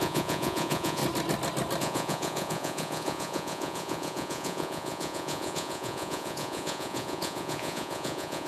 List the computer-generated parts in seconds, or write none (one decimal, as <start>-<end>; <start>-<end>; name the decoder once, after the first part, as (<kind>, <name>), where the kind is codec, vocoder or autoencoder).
0.0-1.0 (vocoder, Vocos); 1.8-8.5